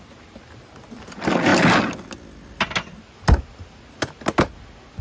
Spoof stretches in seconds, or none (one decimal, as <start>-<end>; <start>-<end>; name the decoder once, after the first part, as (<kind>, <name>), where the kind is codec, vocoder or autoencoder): none